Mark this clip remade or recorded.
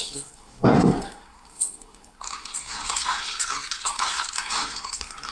remade